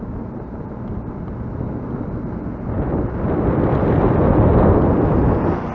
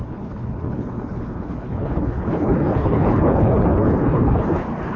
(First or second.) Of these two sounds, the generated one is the second